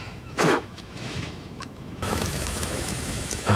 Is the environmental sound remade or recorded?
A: remade